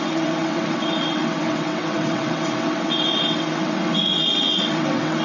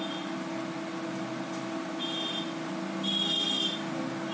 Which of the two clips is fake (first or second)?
first